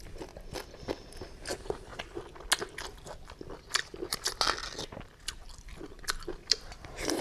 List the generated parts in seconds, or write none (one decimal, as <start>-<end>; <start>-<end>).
0.0-1.9; 6.2-7.2